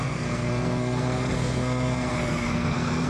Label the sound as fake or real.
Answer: fake